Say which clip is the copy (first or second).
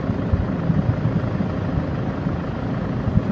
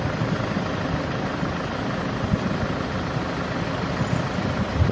second